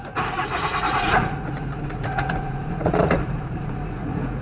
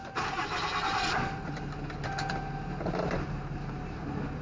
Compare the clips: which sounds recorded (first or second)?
second